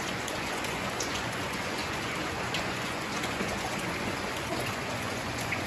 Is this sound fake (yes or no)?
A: yes